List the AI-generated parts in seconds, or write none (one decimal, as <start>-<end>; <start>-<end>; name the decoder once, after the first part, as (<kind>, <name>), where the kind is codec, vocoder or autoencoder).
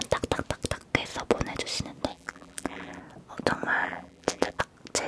2.1-3.0 (vocoder, BigVGAN v2); 3.8-4.6